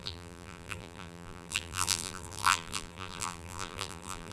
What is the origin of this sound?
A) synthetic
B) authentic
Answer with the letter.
A